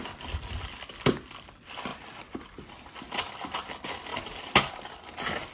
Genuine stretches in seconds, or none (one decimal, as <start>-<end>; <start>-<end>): none